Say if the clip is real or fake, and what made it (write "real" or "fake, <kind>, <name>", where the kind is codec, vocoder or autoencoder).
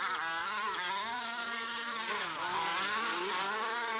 fake, vocoder, BigVGAN v2